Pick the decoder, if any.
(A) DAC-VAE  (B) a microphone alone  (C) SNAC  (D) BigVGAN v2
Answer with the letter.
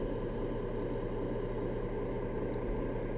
B